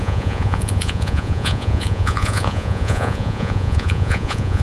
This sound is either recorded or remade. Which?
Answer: remade